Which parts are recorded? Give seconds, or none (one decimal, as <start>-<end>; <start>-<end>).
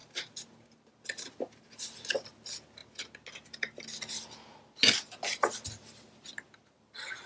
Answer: 0.0-7.3